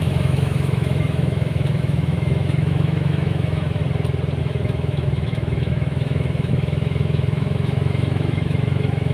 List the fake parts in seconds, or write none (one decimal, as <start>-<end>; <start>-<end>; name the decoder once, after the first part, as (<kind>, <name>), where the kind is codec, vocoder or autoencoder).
0.0-3.8 (autoencoder, DAC-VAE); 4.4-9.1